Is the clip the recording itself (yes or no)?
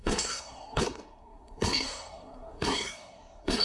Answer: no